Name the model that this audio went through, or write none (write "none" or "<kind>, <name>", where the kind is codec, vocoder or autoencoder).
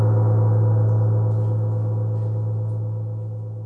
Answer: none